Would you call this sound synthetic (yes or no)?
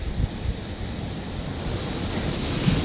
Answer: no